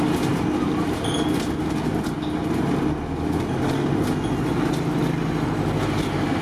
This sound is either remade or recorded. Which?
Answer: recorded